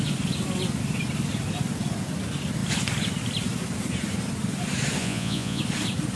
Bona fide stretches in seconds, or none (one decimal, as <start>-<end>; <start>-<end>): 0.0-5.0; 5.6-6.2